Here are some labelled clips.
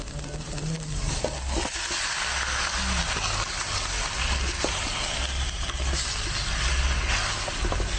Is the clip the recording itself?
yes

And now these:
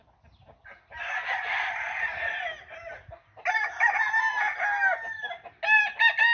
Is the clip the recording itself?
yes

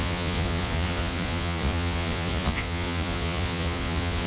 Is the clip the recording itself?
no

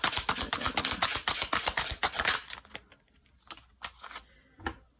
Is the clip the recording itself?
yes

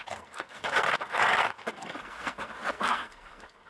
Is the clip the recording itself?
no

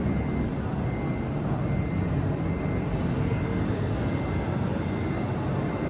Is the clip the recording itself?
yes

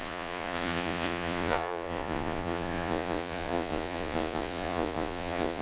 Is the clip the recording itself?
no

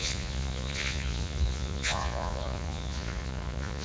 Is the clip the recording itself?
no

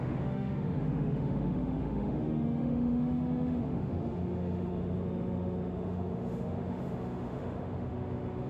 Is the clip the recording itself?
no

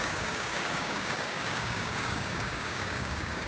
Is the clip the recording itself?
no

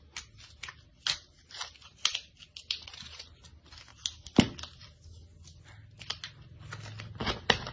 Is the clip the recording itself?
yes